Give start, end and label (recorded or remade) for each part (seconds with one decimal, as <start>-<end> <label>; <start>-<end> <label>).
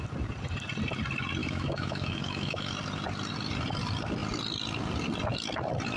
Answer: 0.0-1.4 recorded; 1.4-2.7 remade; 2.7-6.0 recorded